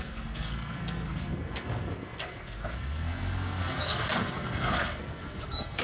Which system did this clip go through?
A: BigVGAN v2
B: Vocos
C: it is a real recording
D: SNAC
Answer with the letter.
D